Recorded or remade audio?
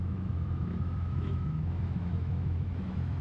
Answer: remade